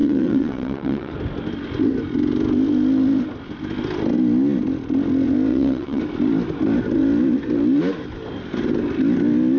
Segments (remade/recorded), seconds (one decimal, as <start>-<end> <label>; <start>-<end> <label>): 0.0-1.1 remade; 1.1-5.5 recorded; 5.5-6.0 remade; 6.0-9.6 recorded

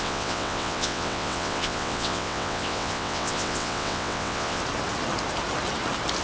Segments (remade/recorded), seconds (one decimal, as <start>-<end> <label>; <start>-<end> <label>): 0.0-4.6 remade; 4.6-6.2 recorded

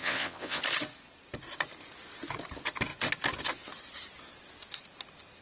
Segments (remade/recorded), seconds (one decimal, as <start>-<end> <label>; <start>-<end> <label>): 0.0-0.6 remade; 0.6-5.4 recorded

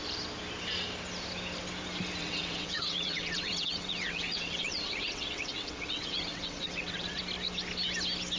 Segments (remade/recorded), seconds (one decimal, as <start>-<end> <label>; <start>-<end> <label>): 0.0-2.2 recorded; 2.2-7.2 remade; 7.2-8.4 recorded